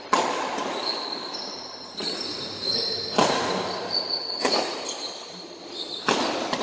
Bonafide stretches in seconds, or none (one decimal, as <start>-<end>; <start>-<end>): 0.0-0.8; 1.4-6.6